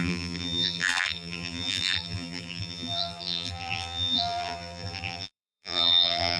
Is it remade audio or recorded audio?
remade